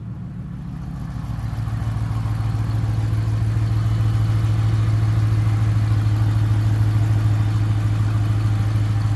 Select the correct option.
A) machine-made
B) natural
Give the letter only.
B